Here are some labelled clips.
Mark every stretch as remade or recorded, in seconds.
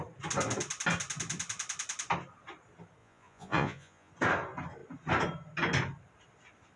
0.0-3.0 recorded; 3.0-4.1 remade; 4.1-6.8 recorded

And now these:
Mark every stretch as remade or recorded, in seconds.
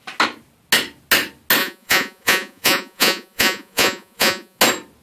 0.0-1.6 recorded; 1.6-4.6 remade; 4.6-5.0 recorded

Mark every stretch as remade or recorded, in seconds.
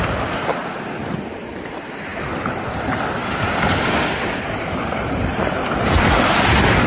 0.0-6.9 recorded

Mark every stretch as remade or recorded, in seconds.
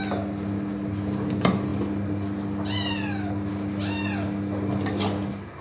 0.0-5.6 recorded